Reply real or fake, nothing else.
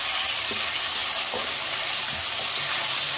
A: real